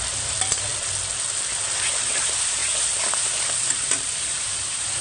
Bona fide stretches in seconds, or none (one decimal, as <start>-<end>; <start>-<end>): 0.7-2.0; 2.6-3.9